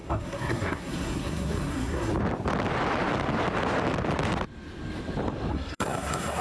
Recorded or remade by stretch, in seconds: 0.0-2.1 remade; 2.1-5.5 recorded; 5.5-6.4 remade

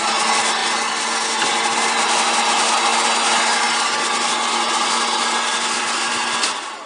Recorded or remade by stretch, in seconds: 0.0-6.9 recorded

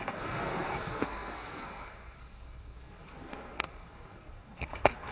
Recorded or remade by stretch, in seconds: 0.0-5.1 remade